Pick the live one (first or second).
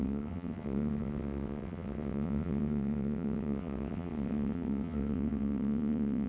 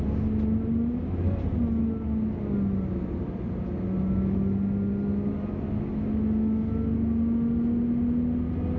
second